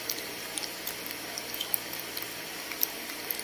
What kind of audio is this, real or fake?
real